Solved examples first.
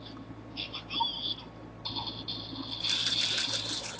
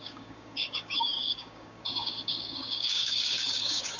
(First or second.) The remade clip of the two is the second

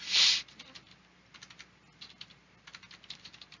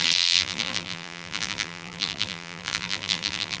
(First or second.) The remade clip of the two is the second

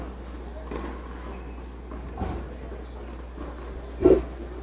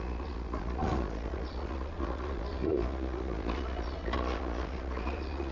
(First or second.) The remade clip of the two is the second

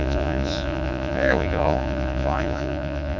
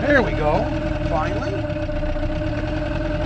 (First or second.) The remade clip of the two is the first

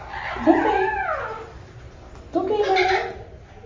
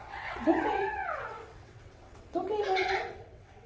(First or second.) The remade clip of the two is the second